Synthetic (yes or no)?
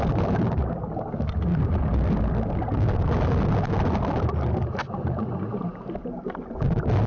no